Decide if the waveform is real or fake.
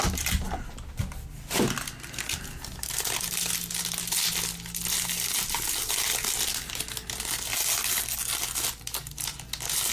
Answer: real